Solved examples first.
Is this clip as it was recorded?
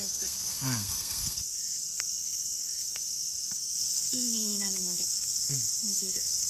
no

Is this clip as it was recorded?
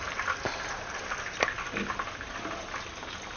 yes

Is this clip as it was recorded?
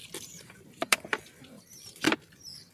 no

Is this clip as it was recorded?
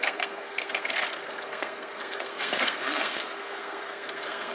no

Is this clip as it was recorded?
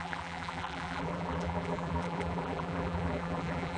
no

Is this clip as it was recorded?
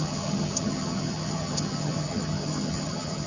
no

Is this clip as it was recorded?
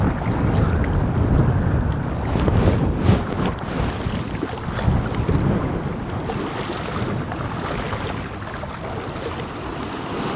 yes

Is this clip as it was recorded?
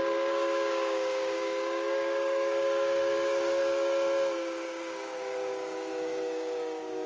no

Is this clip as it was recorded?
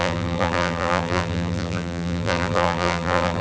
no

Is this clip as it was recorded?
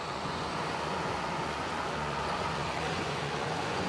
no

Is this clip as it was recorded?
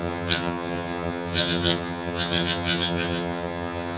no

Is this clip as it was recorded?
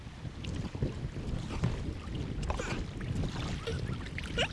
yes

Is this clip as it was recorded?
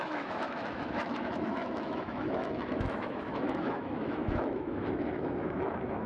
no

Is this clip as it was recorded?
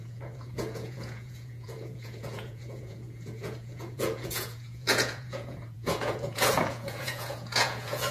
no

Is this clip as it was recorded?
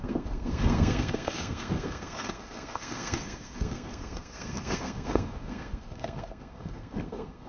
no